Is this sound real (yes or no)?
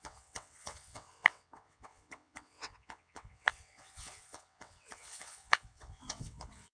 no